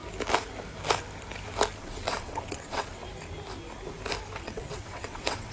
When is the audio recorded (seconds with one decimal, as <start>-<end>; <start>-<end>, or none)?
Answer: 0.0-1.8; 3.0-4.4